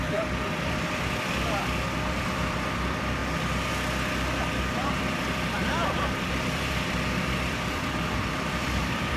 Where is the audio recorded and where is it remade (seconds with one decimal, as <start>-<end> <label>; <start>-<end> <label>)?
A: 0.0-3.2 remade; 3.2-4.6 recorded; 4.6-9.2 remade